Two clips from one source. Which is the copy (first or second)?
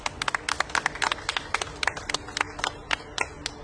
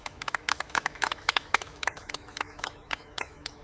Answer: second